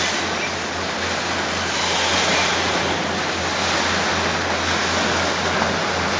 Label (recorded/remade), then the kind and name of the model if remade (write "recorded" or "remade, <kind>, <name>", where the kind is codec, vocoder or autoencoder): recorded